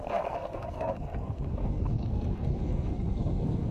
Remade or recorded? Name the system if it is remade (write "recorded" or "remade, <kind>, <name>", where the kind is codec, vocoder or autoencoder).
remade, codec, SNAC